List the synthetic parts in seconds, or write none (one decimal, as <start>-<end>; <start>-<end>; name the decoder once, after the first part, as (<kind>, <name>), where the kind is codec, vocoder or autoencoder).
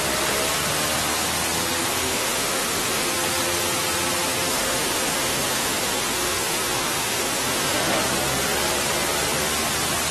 1.9-3.1 (autoencoder, DAC-VAE); 4.5-8.0